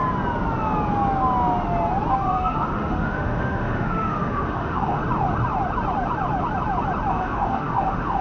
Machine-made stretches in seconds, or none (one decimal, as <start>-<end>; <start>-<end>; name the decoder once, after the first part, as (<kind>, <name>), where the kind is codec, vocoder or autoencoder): 2.1-5.0 (autoencoder, DAC-VAE); 7.1-8.2